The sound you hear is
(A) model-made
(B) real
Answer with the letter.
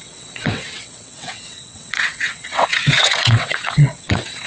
A